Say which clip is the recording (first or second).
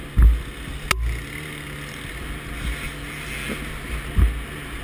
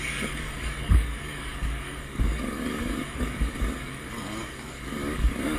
first